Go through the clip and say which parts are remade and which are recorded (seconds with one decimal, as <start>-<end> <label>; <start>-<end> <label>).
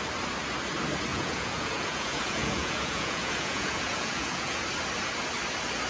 0.0-1.1 recorded; 1.1-4.6 remade; 4.6-5.9 recorded